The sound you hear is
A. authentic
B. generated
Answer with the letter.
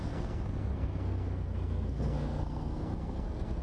B